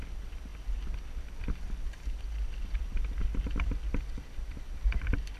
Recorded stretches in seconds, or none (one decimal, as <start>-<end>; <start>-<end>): 0.0-5.4